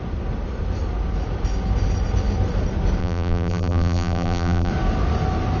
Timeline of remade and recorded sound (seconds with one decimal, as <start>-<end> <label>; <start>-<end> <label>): 0.0-3.0 recorded; 3.0-4.7 remade; 4.7-5.6 recorded

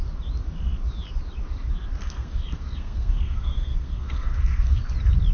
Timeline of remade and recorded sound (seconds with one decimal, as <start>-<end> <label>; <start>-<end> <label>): 0.0-2.0 recorded; 2.0-4.8 remade; 4.8-5.3 recorded